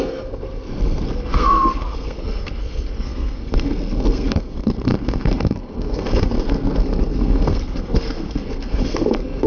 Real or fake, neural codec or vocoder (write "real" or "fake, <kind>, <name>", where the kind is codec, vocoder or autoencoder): fake, codec, SNAC